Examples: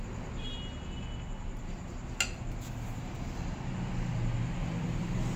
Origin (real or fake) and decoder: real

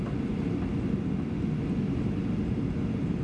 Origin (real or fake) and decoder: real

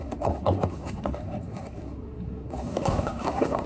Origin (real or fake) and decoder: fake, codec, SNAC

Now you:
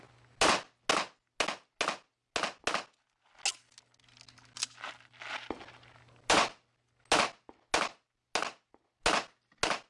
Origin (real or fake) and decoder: real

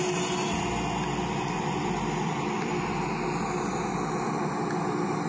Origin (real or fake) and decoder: real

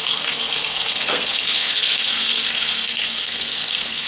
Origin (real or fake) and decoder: fake, codec, SNAC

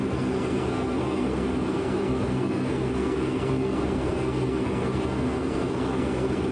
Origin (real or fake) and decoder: fake, codec, SNAC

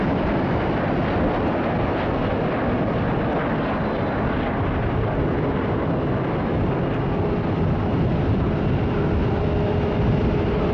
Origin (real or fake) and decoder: real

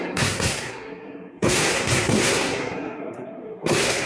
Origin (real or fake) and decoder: fake, codec, SNAC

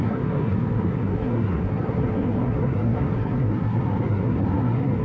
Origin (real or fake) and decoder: fake, codec, SNAC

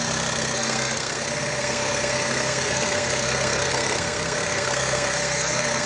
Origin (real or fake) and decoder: fake, codec, SNAC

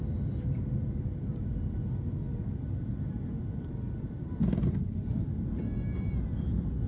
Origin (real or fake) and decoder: real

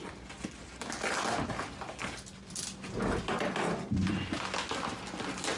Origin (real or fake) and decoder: real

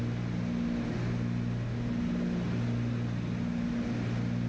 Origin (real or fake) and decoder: real